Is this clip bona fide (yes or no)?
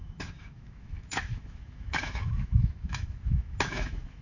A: no